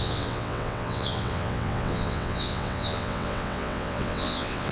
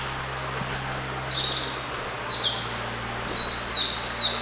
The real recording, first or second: second